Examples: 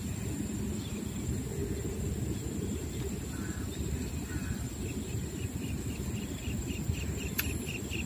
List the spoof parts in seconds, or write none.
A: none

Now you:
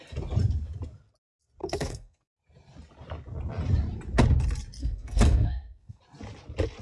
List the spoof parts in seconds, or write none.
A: 1.6-2.3; 4.8-6.0

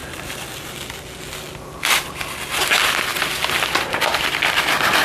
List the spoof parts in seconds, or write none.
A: none

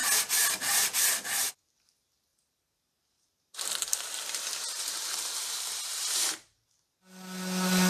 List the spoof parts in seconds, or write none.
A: 2.3-5.8

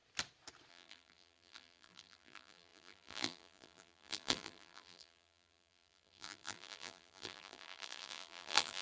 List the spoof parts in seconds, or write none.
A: 0.7-8.8

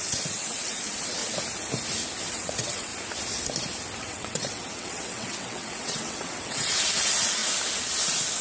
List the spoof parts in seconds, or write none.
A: 0.0-1.2; 2.3-2.9; 4.0-7.4

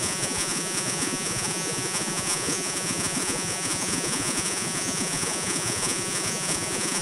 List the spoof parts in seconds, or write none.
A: 0.0-7.0